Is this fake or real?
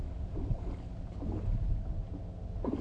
real